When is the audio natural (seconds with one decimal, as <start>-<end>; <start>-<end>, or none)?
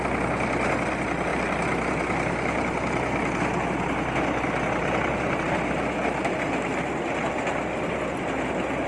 0.0-8.9